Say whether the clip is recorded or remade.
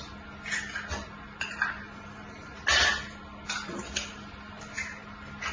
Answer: recorded